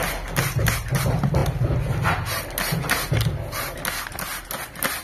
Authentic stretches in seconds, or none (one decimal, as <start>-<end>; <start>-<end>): 0.0-5.0

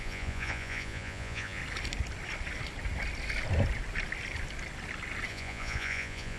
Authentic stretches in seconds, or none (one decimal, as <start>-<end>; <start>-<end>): 1.6-5.3